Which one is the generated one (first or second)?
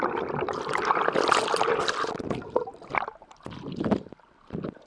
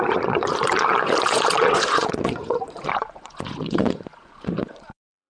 second